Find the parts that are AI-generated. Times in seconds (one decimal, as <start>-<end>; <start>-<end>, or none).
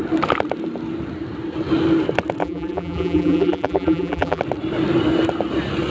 2.4-4.4